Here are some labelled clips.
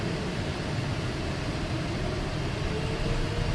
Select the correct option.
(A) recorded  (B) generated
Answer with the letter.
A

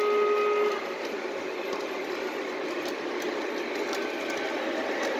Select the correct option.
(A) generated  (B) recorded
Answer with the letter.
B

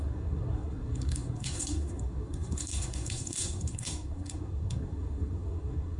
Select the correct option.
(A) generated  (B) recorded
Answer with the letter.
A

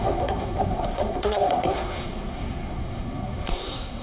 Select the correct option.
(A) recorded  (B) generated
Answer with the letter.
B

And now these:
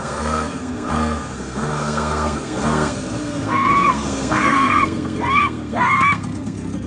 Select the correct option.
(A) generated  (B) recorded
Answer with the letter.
A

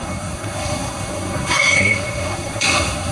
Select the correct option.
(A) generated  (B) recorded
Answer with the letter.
A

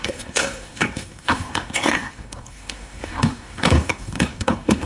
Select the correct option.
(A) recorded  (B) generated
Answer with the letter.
B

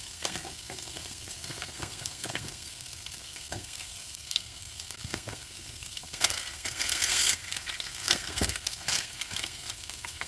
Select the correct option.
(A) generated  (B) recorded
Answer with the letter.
A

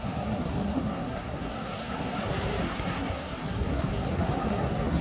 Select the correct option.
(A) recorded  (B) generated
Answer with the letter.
B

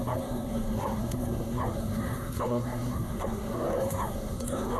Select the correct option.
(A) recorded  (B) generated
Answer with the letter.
B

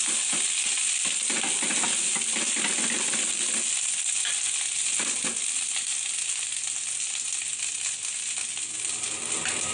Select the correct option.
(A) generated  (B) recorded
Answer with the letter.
B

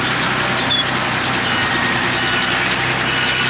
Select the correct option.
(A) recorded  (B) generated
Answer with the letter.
A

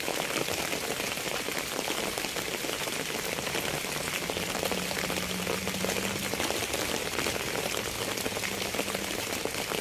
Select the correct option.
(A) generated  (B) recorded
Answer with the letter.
B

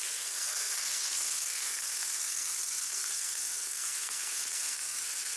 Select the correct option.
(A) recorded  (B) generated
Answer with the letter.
B